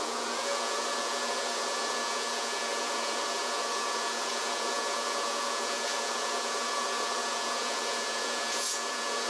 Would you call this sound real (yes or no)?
no